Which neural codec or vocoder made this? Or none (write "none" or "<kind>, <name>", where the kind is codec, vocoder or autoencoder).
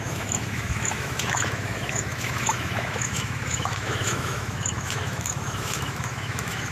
autoencoder, DAC-VAE